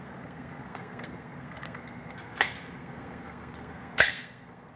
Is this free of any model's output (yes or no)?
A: no